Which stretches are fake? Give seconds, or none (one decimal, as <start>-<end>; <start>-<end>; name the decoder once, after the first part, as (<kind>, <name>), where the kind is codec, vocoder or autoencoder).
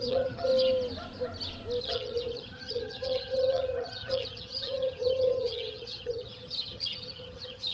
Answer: 0.0-0.5 (vocoder, HiFi-GAN); 1.8-7.7